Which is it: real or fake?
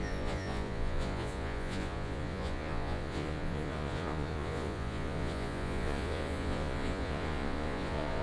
fake